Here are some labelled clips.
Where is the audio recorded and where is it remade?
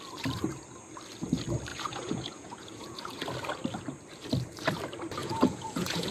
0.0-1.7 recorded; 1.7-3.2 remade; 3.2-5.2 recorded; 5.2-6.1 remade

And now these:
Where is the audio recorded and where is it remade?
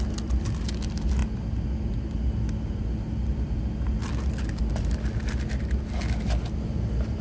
0.0-7.2 recorded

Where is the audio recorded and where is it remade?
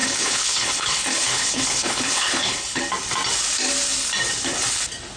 0.0-2.8 remade; 2.8-5.2 recorded